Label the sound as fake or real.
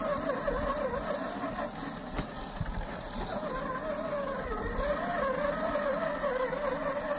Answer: real